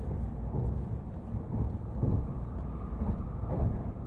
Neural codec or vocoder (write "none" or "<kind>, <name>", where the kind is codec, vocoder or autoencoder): none